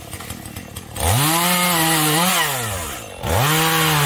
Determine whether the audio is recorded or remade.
recorded